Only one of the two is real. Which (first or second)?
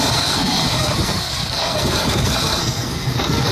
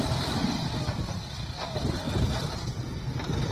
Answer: second